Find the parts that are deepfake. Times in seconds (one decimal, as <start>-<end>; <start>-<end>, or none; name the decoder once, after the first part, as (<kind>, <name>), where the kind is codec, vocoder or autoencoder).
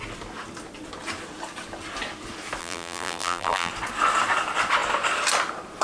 2.6-3.7 (vocoder, BigVGAN v2)